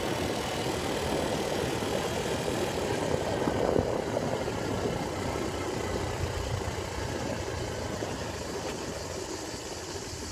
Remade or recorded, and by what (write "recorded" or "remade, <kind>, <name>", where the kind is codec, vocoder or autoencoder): recorded